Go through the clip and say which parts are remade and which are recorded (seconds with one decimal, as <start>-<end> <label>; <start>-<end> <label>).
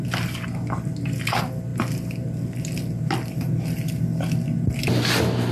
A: 0.0-5.5 recorded